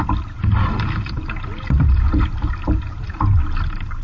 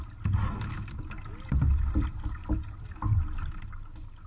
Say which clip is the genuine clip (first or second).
second